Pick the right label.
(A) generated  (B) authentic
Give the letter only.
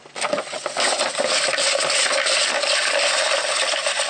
B